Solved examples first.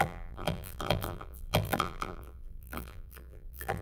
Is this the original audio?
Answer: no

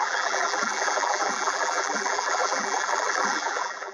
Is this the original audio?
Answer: no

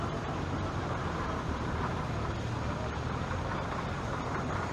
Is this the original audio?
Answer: no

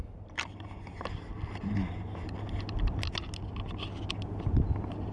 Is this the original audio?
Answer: yes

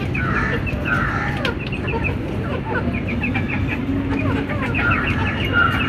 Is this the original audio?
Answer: yes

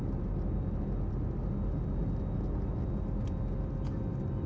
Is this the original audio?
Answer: yes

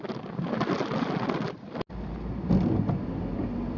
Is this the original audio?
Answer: yes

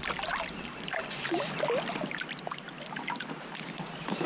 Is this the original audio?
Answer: yes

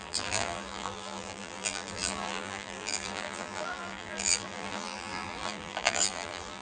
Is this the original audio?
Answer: no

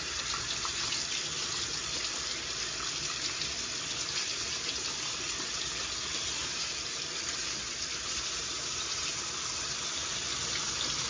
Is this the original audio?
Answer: no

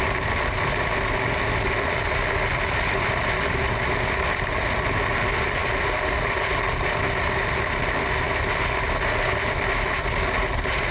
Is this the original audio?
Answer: yes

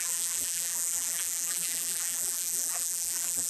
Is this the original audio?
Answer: no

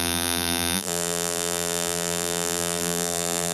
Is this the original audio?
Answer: no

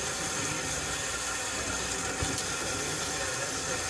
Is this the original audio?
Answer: yes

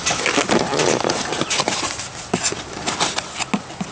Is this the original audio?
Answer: yes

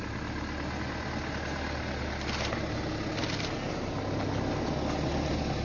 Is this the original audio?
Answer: yes